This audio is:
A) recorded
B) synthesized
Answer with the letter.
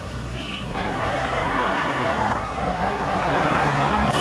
B